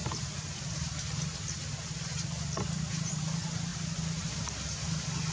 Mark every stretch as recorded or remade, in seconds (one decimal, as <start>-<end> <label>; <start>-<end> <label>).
0.0-5.3 recorded